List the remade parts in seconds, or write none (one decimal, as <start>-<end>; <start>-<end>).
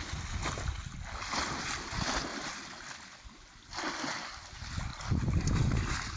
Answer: none